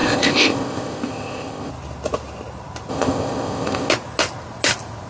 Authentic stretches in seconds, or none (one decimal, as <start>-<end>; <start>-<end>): 1.7-2.9; 3.9-5.1